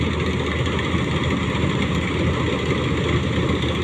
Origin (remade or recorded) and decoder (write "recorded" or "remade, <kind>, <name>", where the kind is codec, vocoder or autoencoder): recorded